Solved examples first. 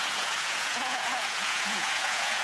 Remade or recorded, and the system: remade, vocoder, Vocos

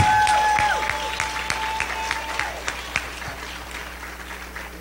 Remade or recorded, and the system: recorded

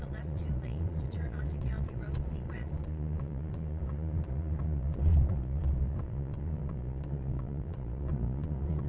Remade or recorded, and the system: remade, vocoder, Vocos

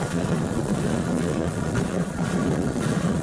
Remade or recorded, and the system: remade, vocoder, Vocos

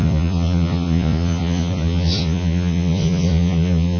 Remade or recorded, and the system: remade, vocoder, Vocos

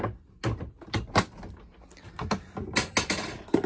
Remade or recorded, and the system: recorded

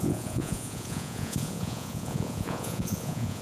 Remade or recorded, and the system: remade, vocoder, Vocos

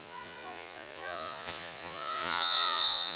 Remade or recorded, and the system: remade, vocoder, Vocos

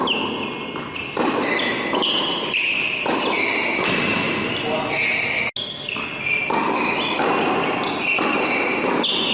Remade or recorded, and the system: recorded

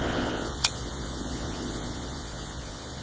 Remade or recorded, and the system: remade, vocoder, Vocos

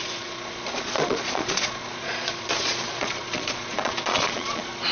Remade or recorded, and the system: remade, vocoder, Vocos